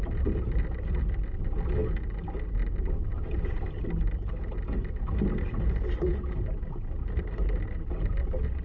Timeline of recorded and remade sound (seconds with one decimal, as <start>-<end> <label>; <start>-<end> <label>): 0.0-8.6 recorded